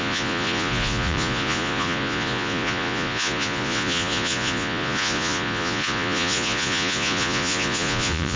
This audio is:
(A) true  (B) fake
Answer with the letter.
B